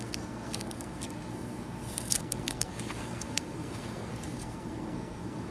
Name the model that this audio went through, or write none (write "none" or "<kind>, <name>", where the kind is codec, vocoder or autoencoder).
codec, SNAC